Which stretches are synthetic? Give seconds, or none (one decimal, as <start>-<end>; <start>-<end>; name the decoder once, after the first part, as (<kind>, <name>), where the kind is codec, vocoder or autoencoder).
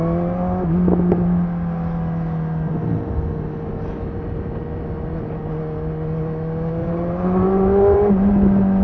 6.8-8.3 (vocoder, BigVGAN v2)